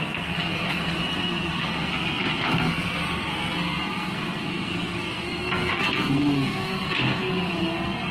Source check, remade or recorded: remade